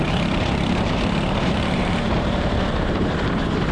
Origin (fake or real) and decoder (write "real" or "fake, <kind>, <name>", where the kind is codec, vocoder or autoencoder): fake, vocoder, BigVGAN v2